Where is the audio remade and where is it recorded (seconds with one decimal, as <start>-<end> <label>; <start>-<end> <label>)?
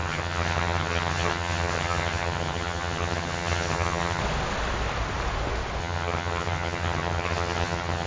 0.0-4.2 remade; 4.2-5.8 recorded; 5.8-8.1 remade